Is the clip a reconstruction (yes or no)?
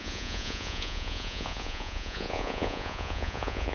yes